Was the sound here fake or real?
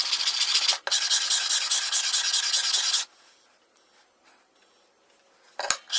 real